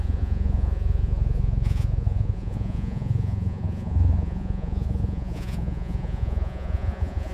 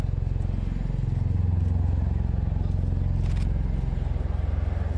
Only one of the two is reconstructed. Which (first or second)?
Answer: first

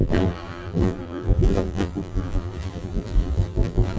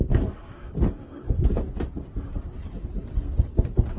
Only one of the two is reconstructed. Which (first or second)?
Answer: first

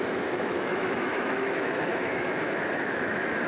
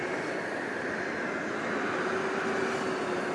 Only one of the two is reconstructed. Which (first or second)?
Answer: first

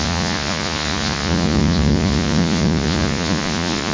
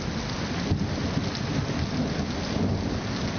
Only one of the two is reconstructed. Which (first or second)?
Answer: first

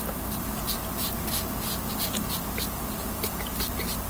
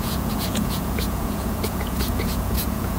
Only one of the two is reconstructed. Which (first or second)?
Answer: second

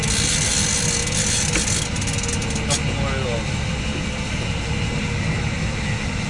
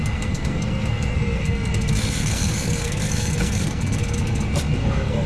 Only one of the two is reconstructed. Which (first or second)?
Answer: second